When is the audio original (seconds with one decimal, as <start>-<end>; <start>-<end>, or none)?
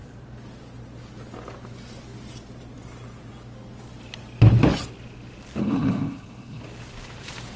0.0-5.6; 6.6-7.6